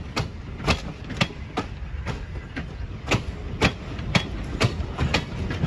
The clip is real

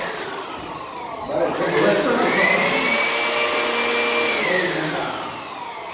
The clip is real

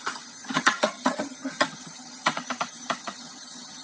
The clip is fake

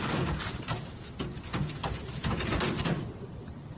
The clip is real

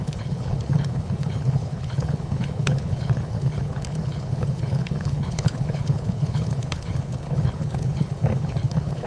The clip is fake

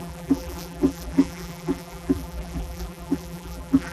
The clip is fake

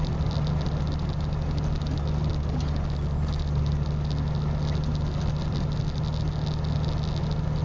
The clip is real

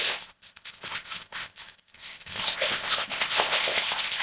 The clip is fake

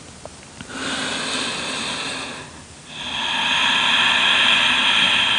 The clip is real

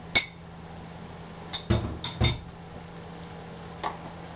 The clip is real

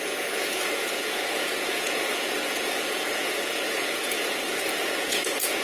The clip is fake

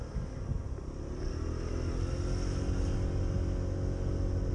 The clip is real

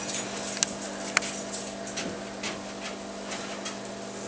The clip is real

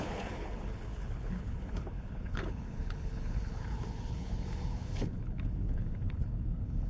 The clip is fake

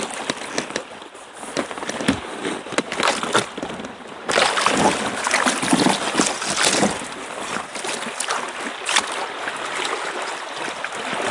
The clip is real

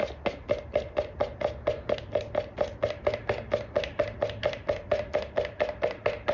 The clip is real